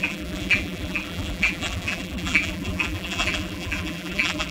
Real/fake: fake